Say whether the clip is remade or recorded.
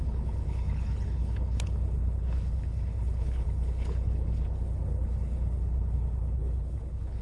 remade